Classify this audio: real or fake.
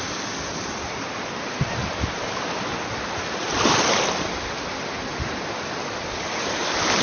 real